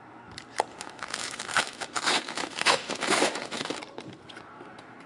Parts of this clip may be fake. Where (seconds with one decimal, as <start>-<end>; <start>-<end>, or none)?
0.7-3.8